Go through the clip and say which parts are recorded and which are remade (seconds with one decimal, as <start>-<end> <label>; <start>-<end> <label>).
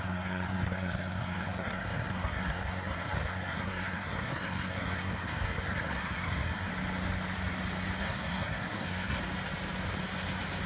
0.0-6.7 remade; 6.7-8.0 recorded; 8.0-9.2 remade; 9.2-10.7 recorded